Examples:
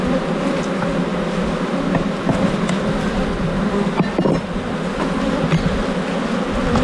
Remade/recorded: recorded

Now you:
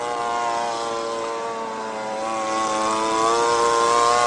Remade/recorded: recorded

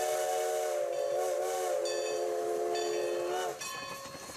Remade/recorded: recorded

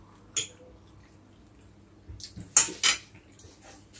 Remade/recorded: recorded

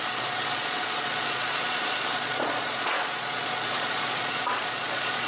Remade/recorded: remade